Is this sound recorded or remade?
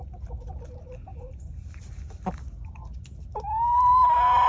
recorded